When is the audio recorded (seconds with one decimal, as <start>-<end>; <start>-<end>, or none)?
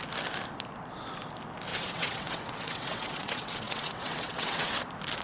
0.0-1.7; 4.8-5.2